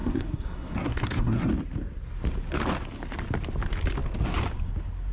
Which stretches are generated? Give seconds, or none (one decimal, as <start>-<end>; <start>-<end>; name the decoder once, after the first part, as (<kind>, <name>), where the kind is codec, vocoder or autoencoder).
0.0-1.5 (codec, SNAC)